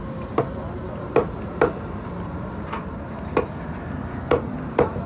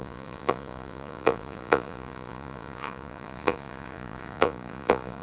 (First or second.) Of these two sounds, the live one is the first